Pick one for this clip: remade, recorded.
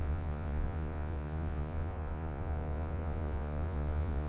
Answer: remade